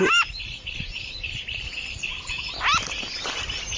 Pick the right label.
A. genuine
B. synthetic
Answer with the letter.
A